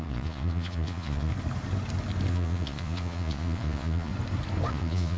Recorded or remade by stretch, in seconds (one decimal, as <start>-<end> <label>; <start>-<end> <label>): 0.0-1.3 remade; 1.3-2.3 recorded; 2.3-4.1 remade; 4.1-4.7 recorded; 4.7-5.2 remade